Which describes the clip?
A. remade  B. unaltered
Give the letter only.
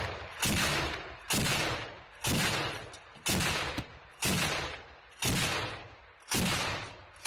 B